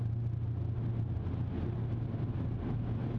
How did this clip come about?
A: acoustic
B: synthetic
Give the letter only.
A